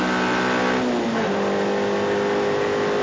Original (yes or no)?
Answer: yes